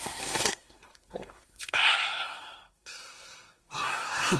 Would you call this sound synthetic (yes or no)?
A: yes